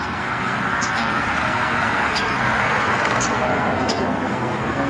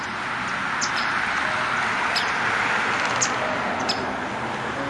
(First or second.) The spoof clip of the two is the first